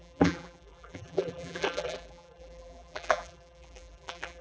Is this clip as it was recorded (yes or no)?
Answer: no